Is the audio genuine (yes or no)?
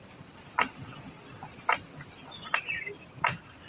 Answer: yes